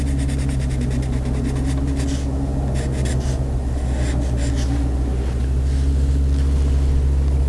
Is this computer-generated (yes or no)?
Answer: no